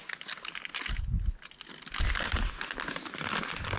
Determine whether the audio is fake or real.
real